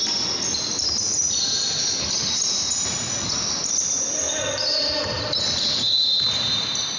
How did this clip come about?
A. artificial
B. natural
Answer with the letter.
B